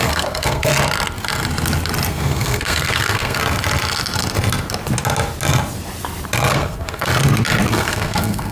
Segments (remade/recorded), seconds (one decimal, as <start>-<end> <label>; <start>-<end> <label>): 0.0-0.7 remade; 0.7-2.1 recorded; 2.1-3.4 remade; 3.4-6.5 recorded; 6.5-7.1 remade; 7.1-7.7 recorded; 7.7-8.5 remade